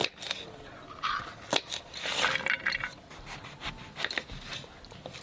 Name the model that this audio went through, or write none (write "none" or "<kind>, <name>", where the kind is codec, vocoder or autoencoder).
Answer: none